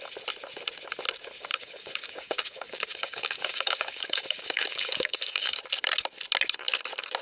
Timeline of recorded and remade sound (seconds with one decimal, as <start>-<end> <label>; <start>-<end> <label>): 0.0-1.5 recorded; 1.5-5.6 remade; 5.6-7.2 recorded